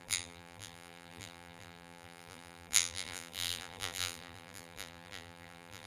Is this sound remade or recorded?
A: remade